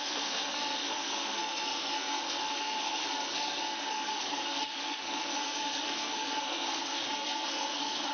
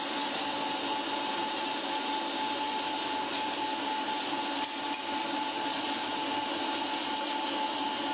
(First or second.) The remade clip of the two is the first